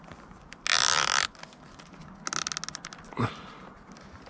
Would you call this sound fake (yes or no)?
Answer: no